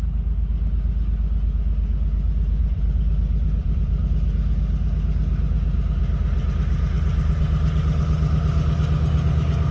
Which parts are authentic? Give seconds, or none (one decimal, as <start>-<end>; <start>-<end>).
0.0-2.6; 4.0-9.7

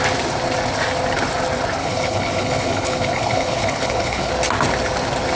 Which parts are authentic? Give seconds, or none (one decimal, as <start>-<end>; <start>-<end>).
0.0-1.8; 4.3-5.4

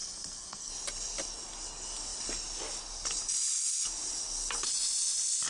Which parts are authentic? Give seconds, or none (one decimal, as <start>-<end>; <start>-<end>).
0.7-5.5

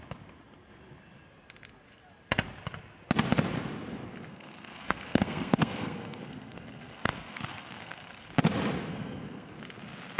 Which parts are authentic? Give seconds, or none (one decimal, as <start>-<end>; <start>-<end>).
0.0-4.3; 8.3-8.9; 9.5-10.2

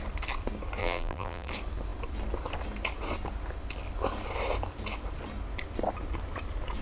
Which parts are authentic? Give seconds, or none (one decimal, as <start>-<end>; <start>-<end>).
0.0-0.8; 1.5-6.8

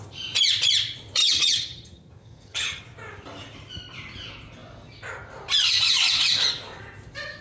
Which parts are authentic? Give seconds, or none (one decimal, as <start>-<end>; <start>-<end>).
0.0-1.2; 2.8-7.4

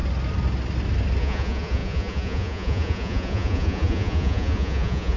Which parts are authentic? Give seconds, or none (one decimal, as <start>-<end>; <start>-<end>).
0.0-1.2